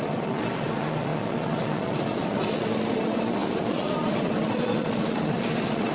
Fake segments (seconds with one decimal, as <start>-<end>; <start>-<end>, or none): 0.0-5.9